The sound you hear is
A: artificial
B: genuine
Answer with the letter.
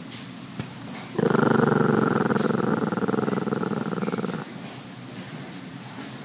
B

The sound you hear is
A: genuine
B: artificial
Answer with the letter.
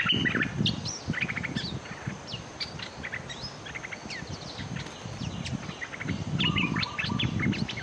A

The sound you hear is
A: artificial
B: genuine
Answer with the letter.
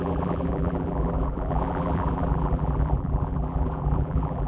A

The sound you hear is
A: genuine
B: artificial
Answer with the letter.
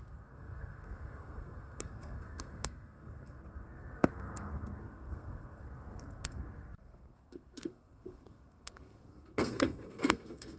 B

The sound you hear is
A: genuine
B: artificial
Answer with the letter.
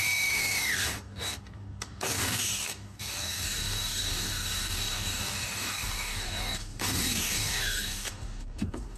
B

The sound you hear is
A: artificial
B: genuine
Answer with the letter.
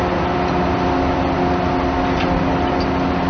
B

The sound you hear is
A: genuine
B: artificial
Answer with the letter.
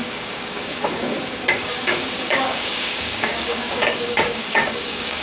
B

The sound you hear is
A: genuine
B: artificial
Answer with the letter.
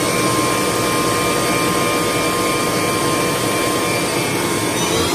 A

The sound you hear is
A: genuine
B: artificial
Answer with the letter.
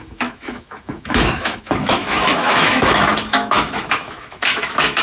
B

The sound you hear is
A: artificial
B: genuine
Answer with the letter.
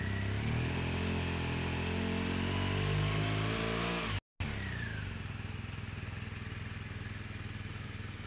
B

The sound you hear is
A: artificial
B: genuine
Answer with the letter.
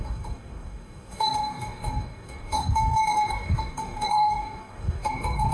A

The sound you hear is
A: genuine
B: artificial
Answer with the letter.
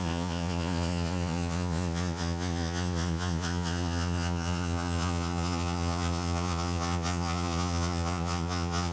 B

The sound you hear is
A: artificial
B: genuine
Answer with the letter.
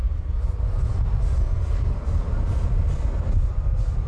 B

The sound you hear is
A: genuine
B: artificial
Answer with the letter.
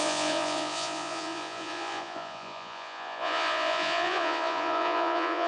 B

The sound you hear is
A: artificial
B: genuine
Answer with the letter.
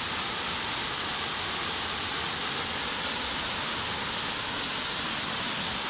B